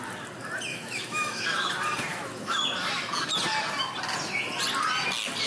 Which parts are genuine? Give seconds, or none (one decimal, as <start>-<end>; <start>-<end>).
0.0-0.7; 1.7-2.1; 2.6-5.5